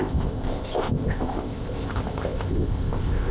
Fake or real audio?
fake